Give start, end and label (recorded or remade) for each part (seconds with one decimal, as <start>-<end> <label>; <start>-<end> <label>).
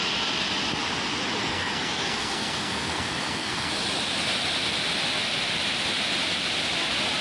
0.0-1.4 recorded; 1.4-3.7 remade; 3.7-7.2 recorded